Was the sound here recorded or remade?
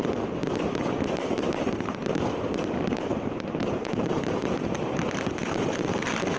remade